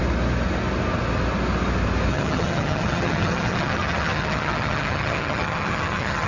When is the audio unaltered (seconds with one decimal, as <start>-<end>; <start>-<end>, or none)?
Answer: 0.0-2.1